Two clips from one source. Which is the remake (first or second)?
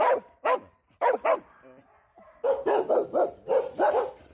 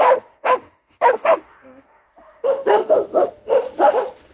second